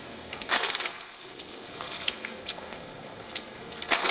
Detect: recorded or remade remade